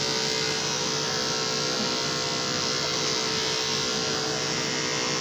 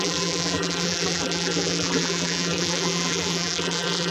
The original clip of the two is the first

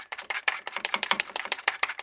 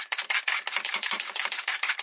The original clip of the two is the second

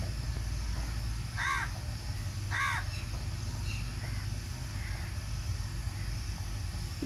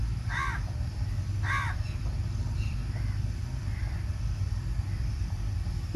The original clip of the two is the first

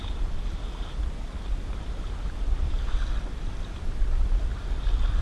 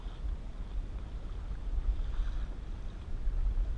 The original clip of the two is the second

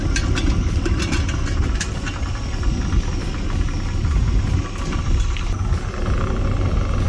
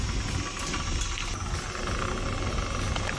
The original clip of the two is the second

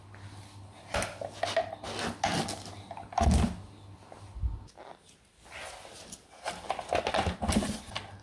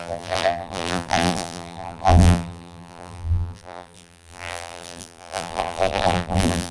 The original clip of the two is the first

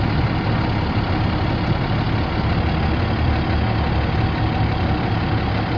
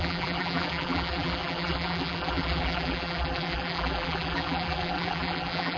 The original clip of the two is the first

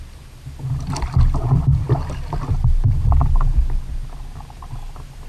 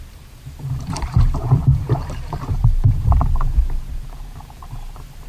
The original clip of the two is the first